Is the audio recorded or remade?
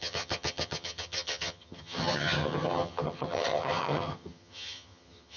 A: remade